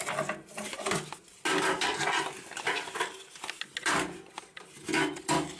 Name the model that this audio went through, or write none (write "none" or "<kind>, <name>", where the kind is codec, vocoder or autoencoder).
none